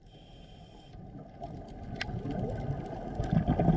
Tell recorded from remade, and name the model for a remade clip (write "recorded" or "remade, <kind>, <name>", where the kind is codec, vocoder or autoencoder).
recorded